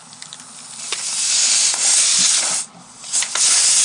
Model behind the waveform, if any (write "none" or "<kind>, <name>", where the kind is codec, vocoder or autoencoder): none